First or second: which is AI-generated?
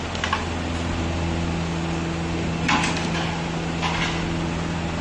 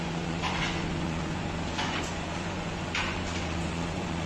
second